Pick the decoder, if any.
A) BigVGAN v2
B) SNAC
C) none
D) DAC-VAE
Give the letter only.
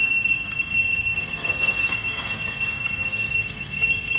B